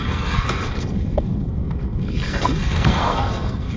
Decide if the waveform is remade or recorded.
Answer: remade